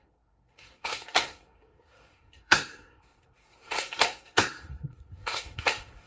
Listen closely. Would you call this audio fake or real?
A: fake